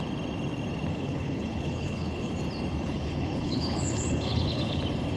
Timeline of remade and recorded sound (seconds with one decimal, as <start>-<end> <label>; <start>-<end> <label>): 0.0-0.9 recorded; 0.9-2.3 remade; 2.3-2.8 recorded; 2.8-4.8 remade; 4.8-5.2 recorded